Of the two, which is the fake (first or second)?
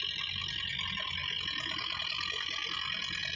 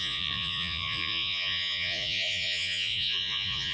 second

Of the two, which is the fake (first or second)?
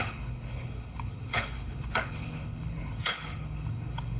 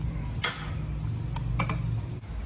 first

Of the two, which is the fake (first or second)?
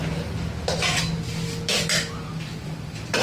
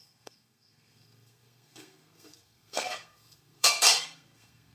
second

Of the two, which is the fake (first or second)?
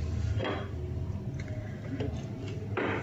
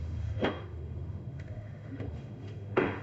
second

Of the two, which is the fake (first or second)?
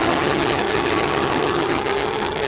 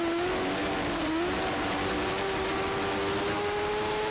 first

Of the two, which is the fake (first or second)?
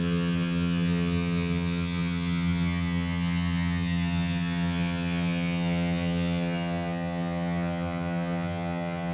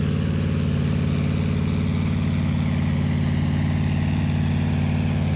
first